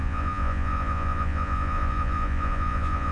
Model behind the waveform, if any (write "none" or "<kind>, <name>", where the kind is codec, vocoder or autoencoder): vocoder, Vocos